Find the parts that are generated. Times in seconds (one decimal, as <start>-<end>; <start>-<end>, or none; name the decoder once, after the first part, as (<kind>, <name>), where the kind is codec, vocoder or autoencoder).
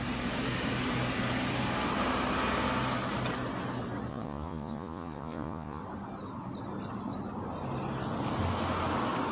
4.1-5.8 (vocoder, Vocos)